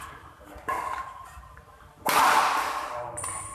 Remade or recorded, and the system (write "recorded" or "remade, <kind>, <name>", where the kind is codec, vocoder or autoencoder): recorded